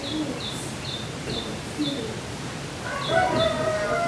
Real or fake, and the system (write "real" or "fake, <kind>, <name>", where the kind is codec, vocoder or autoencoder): real